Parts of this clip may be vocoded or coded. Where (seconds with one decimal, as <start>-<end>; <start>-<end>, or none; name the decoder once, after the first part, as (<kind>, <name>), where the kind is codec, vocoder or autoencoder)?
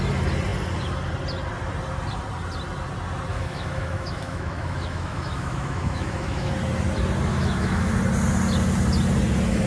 3.3-6.5 (autoencoder, DAC-VAE); 7.3-7.9